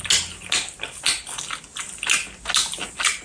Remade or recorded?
recorded